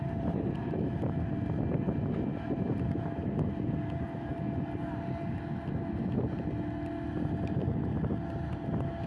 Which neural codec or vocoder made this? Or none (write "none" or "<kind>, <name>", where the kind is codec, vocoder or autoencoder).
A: none